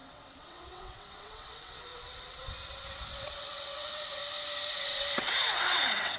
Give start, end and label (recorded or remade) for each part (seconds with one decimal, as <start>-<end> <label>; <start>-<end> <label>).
0.0-4.2 remade; 4.2-4.7 recorded; 4.7-6.2 remade